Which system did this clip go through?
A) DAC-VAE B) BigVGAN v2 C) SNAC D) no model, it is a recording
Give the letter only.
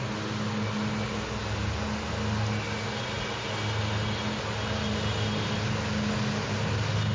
D